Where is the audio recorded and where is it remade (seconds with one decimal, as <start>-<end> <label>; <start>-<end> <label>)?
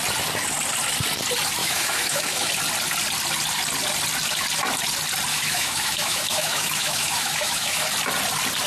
0.0-1.6 recorded; 1.6-2.5 remade; 2.5-5.3 recorded; 5.3-7.9 remade; 7.9-8.7 recorded